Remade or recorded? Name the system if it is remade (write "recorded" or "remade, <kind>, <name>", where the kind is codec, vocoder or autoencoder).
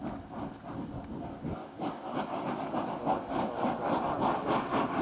recorded